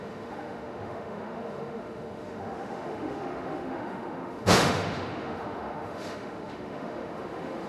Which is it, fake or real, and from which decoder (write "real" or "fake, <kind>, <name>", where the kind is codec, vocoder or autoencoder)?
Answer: fake, autoencoder, DAC-VAE